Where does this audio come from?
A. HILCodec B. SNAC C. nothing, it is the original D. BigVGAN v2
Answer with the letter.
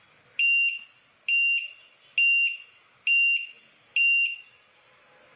C